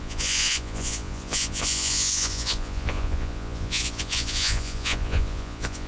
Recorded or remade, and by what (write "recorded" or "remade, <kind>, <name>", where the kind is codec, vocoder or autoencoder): remade, vocoder, Vocos